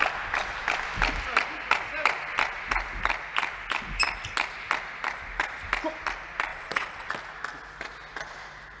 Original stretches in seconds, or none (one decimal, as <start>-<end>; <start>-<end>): 0.0-6.5; 7.1-8.8